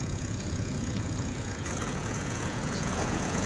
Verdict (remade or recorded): remade